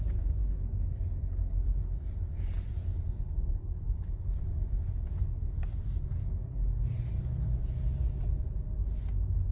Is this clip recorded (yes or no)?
yes